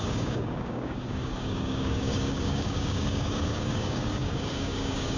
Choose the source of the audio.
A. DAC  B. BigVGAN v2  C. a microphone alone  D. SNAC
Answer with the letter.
A